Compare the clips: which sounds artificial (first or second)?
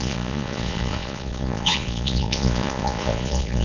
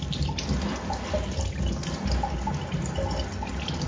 first